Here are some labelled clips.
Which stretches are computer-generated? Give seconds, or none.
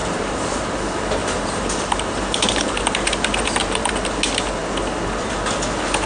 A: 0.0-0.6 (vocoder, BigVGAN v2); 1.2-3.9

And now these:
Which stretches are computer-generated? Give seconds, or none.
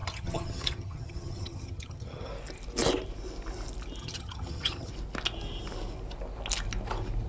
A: 0.0-2.3 (vocoder, HiFi-GAN); 4.0-4.9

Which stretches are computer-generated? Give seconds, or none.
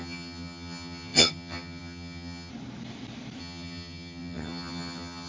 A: 0.0-2.5 (vocoder, HiFi-GAN); 3.4-5.3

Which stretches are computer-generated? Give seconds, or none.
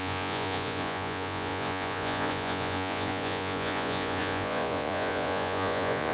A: 0.0-6.1 (vocoder, Vocos)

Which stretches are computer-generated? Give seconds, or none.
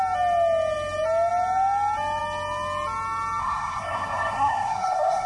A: 3.4-5.3 (codec, SNAC)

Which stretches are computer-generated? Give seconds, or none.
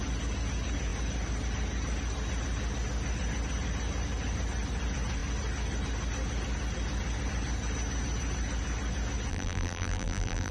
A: 9.3-10.5 (vocoder, BigVGAN v2)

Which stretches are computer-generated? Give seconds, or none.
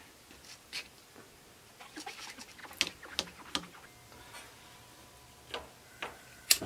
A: none